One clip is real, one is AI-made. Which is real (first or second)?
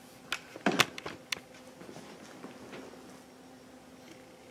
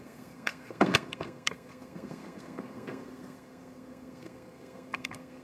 first